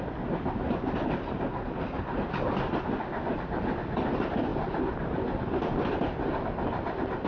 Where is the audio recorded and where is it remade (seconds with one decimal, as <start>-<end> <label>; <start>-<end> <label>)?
0.0-7.3 recorded